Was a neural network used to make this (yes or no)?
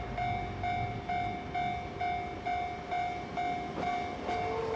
no